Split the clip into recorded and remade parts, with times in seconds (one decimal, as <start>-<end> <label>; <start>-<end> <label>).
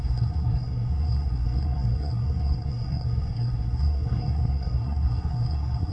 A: 0.0-5.9 remade